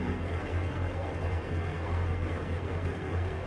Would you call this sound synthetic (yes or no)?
yes